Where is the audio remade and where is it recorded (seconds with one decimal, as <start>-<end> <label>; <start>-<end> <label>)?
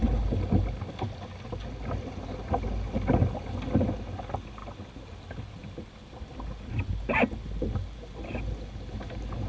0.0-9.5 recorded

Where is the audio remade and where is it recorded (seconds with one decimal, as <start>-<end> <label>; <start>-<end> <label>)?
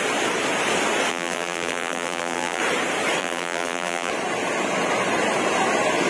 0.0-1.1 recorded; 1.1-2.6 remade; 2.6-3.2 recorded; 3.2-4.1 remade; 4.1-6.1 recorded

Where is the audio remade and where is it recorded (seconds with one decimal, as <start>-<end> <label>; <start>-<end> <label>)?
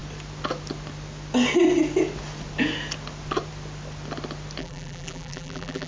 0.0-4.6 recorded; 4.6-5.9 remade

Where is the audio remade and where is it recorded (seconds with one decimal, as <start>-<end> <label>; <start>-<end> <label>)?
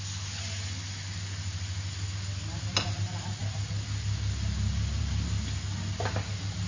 0.0-6.7 recorded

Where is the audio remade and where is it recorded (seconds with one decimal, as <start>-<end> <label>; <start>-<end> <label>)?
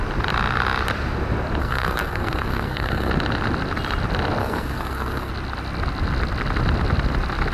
0.0-1.6 recorded; 1.6-3.1 remade; 3.1-4.4 recorded; 4.4-5.3 remade; 5.3-7.5 recorded